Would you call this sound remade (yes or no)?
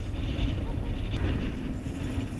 no